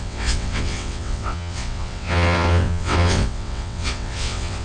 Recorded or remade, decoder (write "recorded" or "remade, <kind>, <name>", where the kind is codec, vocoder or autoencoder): remade, vocoder, WaveNeXt